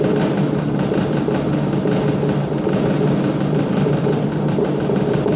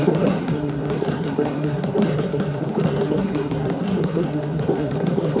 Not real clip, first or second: second